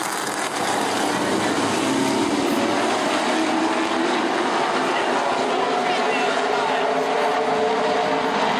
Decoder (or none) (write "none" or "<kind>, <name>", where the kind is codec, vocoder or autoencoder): none